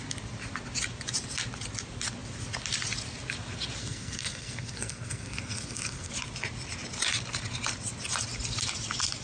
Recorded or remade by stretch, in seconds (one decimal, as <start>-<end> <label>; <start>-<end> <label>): 0.0-3.8 recorded; 3.8-6.1 remade; 6.1-9.2 recorded